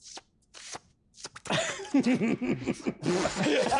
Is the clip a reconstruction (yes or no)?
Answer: no